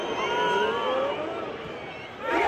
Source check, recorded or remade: remade